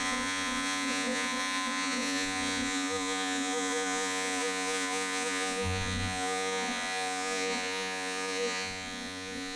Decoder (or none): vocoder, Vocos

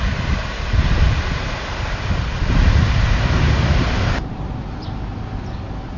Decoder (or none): none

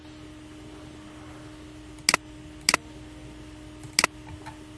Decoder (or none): none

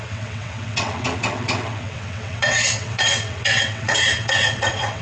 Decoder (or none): vocoder, WaveNeXt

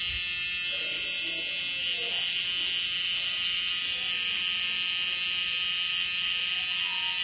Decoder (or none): none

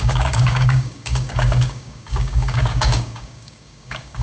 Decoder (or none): codec, DAC